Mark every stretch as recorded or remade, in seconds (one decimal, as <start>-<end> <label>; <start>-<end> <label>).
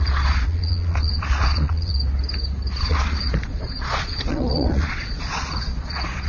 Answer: 0.0-1.9 remade; 1.9-2.8 recorded; 2.8-6.3 remade